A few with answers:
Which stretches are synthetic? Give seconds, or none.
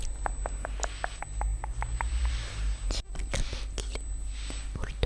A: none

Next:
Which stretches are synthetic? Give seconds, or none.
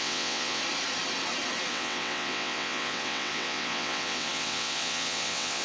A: 0.0-0.6; 1.7-5.6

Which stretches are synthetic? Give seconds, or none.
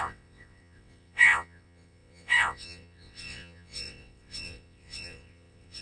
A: 0.0-5.8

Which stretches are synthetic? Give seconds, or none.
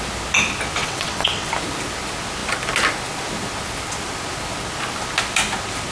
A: 0.8-1.5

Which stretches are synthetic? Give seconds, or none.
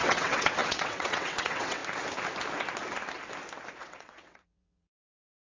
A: 0.0-1.8; 3.8-5.5